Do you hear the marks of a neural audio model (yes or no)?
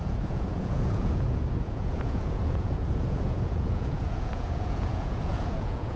yes